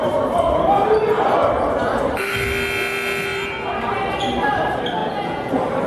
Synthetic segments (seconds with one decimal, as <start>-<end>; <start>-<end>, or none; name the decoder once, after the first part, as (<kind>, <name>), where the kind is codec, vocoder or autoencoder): 5.0-5.5 (vocoder, Vocos)